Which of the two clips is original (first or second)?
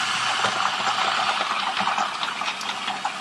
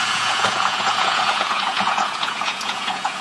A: first